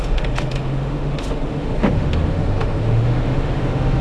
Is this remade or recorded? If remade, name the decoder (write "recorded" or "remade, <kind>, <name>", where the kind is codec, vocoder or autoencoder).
remade, autoencoder, DAC-VAE